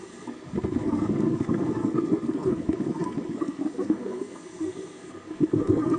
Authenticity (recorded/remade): remade